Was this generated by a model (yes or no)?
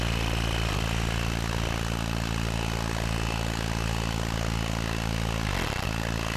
no